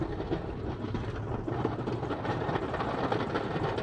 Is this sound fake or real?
real